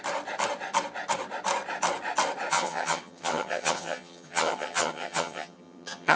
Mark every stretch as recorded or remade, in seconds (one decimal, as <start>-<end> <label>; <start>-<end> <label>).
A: 0.0-2.5 recorded; 2.5-6.2 remade